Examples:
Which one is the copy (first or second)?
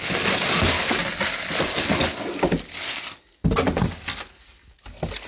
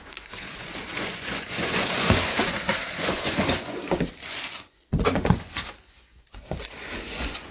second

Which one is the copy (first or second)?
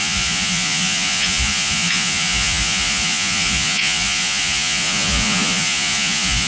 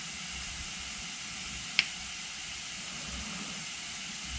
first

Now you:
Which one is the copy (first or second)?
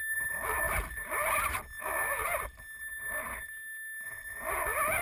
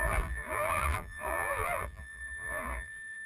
second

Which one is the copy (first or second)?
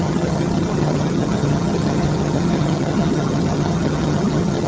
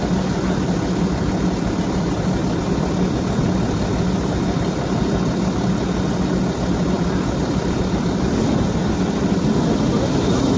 first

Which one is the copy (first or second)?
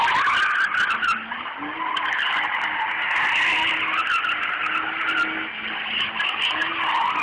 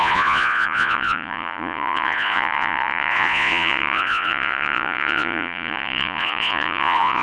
second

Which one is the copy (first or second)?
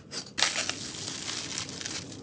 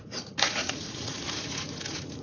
second